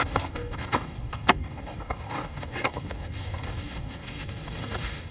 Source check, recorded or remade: remade